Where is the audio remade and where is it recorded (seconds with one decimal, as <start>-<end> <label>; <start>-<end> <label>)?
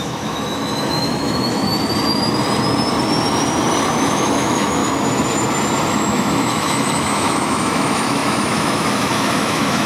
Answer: 0.0-1.7 remade; 1.7-3.9 recorded; 3.9-4.8 remade; 4.8-5.9 recorded; 5.9-9.9 remade